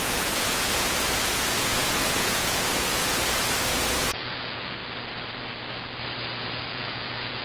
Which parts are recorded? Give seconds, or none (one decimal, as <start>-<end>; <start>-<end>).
4.8-6.7